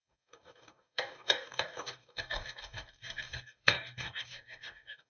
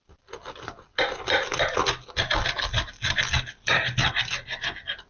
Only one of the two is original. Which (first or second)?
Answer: second